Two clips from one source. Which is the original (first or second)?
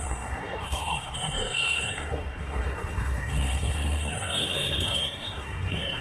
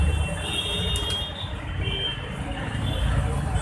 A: second